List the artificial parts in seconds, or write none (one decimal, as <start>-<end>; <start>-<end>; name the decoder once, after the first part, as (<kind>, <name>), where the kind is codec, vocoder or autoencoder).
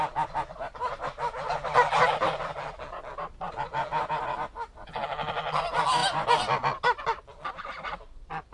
none